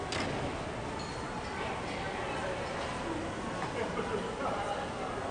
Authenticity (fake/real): real